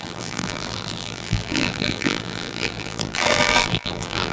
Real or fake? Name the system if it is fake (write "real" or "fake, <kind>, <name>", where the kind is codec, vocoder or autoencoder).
fake, vocoder, BigVGAN v2